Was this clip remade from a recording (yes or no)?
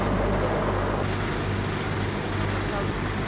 no